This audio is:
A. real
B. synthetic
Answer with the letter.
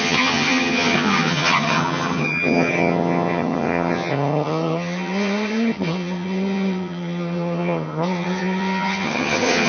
B